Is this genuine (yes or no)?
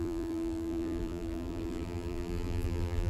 no